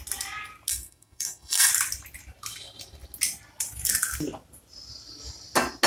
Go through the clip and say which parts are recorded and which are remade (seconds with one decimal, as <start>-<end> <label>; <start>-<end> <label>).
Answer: 0.0-0.7 recorded; 0.7-1.7 remade; 1.7-5.9 recorded